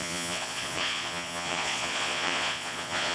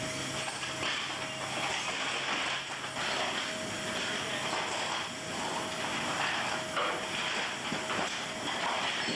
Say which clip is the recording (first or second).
second